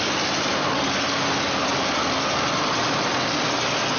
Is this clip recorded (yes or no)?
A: yes